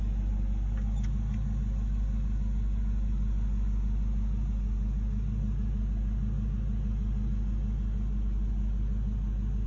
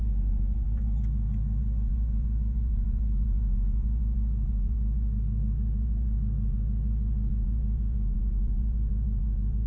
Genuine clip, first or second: first